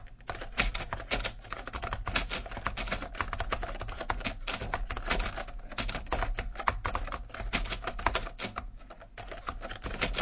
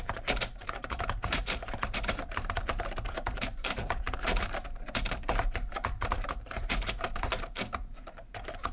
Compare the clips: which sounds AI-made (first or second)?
second